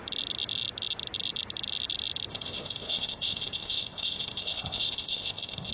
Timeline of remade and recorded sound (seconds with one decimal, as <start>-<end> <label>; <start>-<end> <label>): 0.0-2.3 recorded; 2.3-5.7 remade